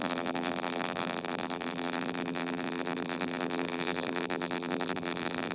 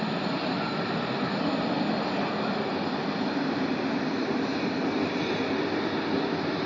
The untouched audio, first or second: second